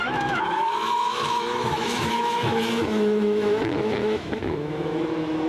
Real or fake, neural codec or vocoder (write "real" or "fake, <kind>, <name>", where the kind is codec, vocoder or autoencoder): fake, autoencoder, DAC-VAE